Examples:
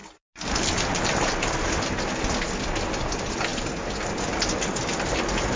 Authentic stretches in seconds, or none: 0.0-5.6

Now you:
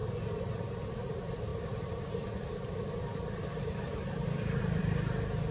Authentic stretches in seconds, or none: 0.0-0.6